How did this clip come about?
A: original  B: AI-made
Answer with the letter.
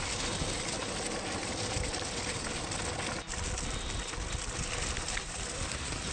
A